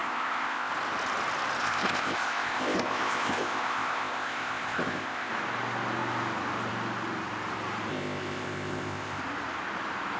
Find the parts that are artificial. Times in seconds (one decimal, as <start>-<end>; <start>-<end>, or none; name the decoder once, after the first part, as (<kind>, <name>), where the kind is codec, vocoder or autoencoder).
0.0-0.7 (codec, ZipCodec); 1.6-5.3; 7.9-9.2